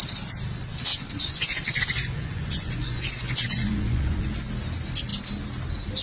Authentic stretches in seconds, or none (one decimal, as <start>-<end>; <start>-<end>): 0.0-0.9; 4.5-6.0